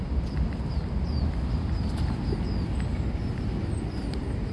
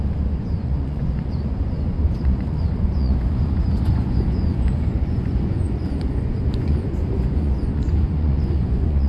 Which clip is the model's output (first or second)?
second